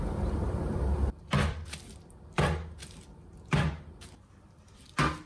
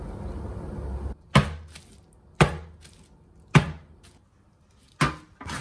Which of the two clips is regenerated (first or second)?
first